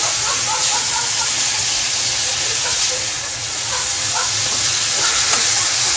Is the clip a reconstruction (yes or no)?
yes